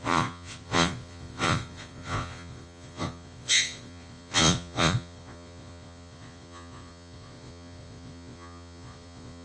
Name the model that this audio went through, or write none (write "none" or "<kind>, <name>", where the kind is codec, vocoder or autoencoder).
vocoder, Vocos